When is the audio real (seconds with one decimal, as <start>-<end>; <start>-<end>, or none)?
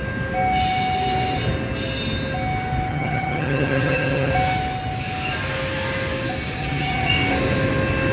0.0-2.9; 4.3-6.6; 7.1-8.1